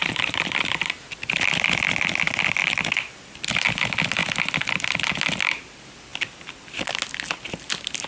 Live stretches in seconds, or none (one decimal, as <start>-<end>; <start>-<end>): 1.0-2.6; 3.8-4.2; 5.0-6.1; 6.9-8.1